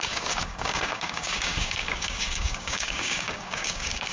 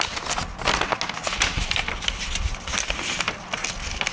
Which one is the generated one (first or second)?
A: first